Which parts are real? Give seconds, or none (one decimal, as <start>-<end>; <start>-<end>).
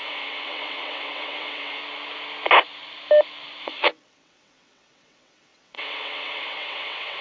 1.8-3.6